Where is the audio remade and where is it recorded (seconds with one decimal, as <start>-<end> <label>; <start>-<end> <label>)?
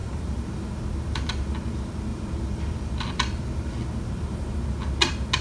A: 0.0-0.7 remade; 0.7-2.1 recorded; 2.1-3.7 remade; 3.7-5.4 recorded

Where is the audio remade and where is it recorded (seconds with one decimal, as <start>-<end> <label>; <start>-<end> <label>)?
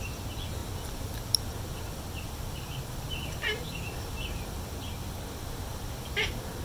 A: 0.0-0.6 recorded; 0.6-4.6 remade; 4.6-5.7 recorded; 5.7-6.6 remade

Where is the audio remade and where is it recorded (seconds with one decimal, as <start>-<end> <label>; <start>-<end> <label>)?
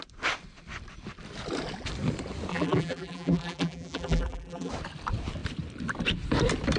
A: 0.0-2.5 recorded; 2.5-4.7 remade; 4.7-6.8 recorded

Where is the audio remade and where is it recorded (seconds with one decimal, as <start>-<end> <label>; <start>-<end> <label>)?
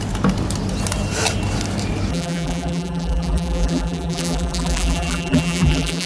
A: 0.0-2.1 recorded; 2.1-6.1 remade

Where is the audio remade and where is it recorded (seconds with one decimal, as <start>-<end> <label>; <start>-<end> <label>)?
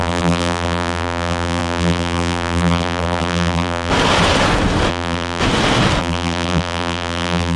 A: 0.0-3.9 remade; 3.9-4.9 recorded; 4.9-5.4 remade; 5.4-6.0 recorded; 6.0-7.6 remade